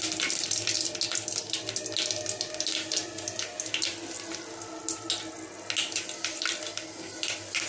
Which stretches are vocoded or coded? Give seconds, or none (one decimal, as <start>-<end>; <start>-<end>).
none